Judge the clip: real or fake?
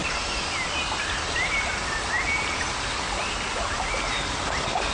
real